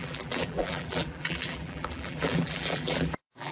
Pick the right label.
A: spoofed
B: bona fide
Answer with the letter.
A